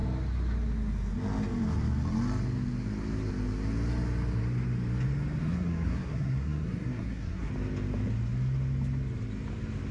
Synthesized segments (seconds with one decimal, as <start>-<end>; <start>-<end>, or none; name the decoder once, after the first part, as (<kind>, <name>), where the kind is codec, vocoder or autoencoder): 5.4-7.5 (codec, SNAC)